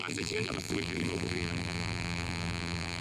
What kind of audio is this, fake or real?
fake